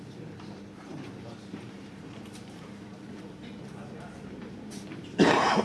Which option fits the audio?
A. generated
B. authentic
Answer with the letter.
A